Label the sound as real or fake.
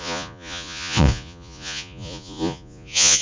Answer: fake